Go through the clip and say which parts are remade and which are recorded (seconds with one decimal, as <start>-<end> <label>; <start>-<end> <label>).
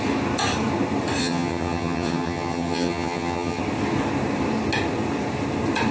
0.0-1.2 recorded; 1.2-3.6 remade; 3.6-5.9 recorded